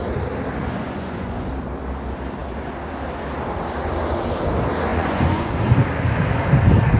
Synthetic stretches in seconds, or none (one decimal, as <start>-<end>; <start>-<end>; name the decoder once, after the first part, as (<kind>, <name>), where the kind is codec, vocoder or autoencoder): 0.6-1.5 (vocoder, Vocos); 4.9-5.5